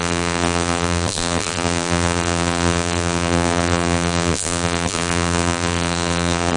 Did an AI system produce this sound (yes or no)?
yes